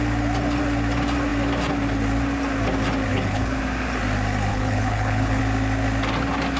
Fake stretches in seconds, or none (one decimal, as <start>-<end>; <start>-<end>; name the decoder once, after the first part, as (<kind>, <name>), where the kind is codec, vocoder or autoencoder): 3.1-3.6 (codec, HILCodec); 4.5-5.4